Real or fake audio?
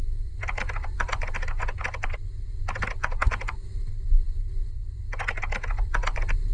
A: real